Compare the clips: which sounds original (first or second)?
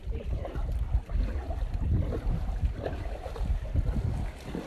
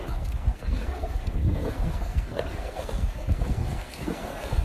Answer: first